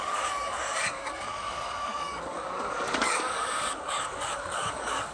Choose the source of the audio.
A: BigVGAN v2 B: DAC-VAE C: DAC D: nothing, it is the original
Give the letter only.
C